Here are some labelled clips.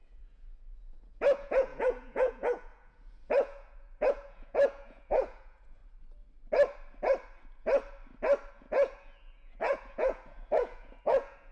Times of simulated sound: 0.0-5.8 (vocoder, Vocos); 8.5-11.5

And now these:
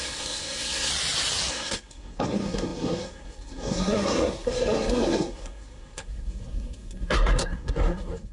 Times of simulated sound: 0.0-0.9 (codec, SNAC); 1.5-8.3

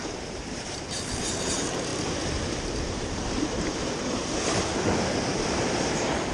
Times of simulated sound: 0.0-1.9 (vocoder, BigVGAN v2); 2.9-4.7